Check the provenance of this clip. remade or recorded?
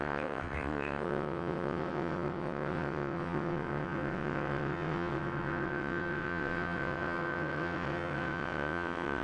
remade